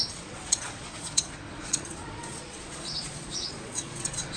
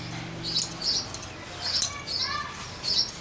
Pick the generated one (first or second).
first